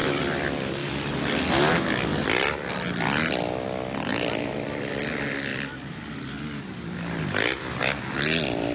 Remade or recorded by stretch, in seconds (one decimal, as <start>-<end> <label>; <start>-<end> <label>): 0.0-2.1 recorded; 2.1-2.7 remade; 2.7-4.1 recorded; 4.1-4.9 remade; 4.9-8.7 recorded